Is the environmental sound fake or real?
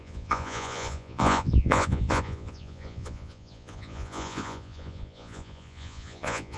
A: fake